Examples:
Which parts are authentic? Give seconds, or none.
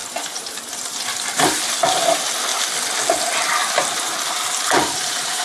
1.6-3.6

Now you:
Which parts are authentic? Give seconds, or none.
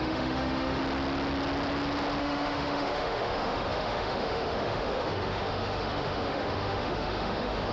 0.8-2.2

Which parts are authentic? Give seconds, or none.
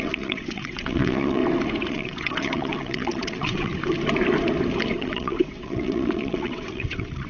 1.4-1.9; 3.7-5.0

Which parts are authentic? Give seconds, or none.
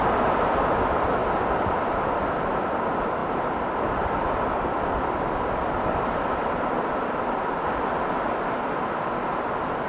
0.0-1.2; 2.1-3.2; 8.1-9.9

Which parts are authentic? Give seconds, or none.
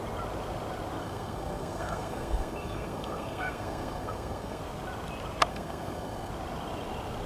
0.0-1.0; 4.6-5.5; 6.3-7.3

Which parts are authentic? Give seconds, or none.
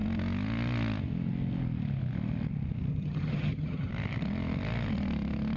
0.0-2.9; 3.9-5.6